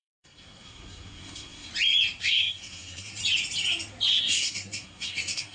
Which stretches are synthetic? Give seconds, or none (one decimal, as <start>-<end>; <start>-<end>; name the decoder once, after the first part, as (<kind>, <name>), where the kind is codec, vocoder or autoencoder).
0.0-1.7 (codec, SNAC); 2.2-3.2; 4.2-5.5